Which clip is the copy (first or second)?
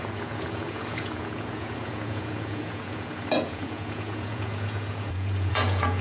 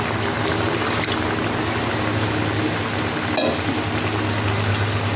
first